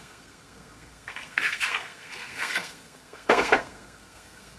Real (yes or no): no